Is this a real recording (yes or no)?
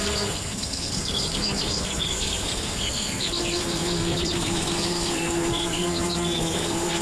no